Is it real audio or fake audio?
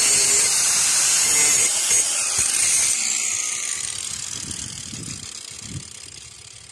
real